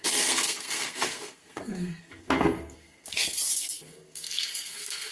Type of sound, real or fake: fake